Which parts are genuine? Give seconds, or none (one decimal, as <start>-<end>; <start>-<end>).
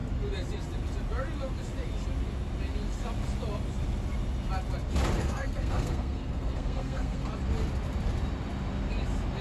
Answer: 0.0-5.2; 7.3-9.4